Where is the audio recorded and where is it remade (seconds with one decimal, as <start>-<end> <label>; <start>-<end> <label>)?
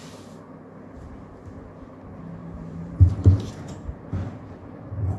0.0-2.4 recorded; 2.4-4.0 remade; 4.0-5.2 recorded